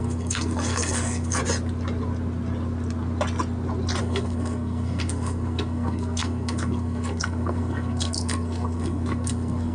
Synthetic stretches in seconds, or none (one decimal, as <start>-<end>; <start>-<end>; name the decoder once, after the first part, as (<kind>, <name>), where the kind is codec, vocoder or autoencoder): 0.0-1.4 (codec, SNAC); 4.0-9.7